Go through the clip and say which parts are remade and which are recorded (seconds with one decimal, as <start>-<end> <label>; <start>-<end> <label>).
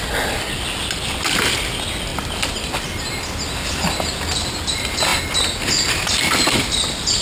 0.0-7.2 recorded